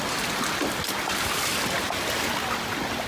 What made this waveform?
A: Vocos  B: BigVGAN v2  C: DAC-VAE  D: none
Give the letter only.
D